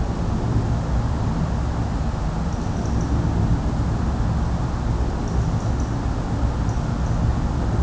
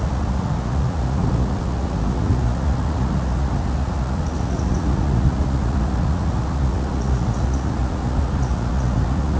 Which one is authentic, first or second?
first